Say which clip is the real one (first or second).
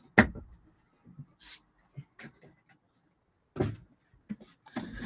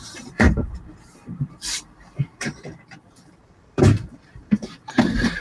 first